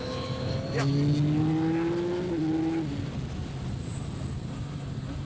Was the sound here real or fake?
real